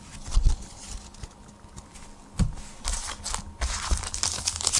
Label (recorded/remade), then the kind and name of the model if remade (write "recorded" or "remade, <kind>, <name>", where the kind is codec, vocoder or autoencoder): recorded